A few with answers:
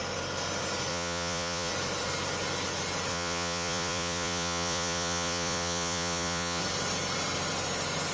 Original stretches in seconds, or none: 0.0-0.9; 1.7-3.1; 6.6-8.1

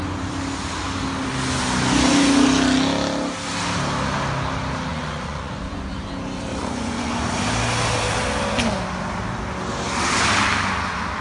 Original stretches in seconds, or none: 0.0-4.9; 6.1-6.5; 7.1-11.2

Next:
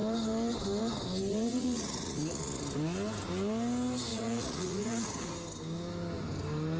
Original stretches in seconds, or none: 0.0-1.3; 2.6-4.1; 5.3-6.8